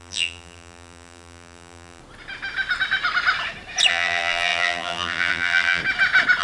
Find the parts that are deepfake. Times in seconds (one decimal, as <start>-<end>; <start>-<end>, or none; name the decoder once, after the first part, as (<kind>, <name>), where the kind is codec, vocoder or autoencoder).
0.0-2.0 (vocoder, BigVGAN v2); 3.9-5.8